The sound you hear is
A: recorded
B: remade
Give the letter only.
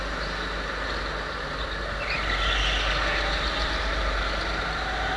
A